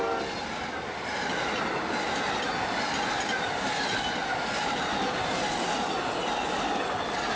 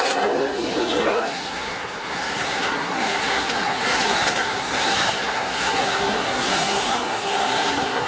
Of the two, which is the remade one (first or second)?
second